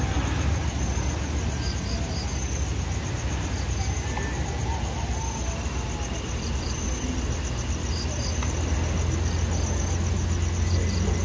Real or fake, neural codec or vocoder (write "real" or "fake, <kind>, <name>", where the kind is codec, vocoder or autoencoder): real